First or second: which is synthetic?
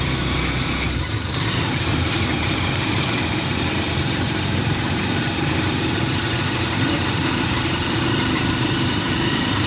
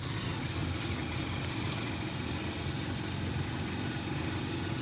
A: first